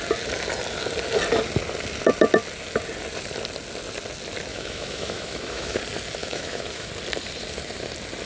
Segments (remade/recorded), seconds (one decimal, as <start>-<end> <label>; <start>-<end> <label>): 0.0-4.5 recorded; 4.5-5.8 remade; 5.8-6.2 recorded; 6.2-6.9 remade; 6.9-8.3 recorded